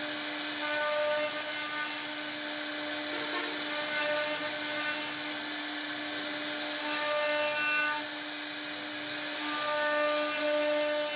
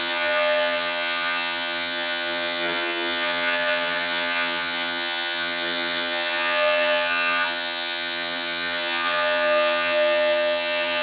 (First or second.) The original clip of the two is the first